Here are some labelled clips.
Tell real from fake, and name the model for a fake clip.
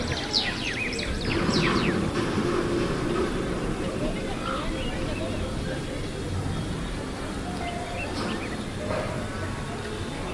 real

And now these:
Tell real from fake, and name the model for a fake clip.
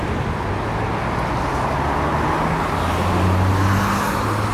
real